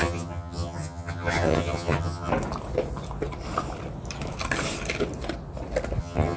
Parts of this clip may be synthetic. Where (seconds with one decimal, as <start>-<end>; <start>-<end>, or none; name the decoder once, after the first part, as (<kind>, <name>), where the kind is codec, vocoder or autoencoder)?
0.0-2.3 (vocoder, HiFi-GAN); 6.0-6.4